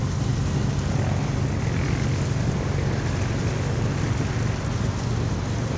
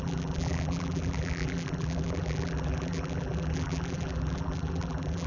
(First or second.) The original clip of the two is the first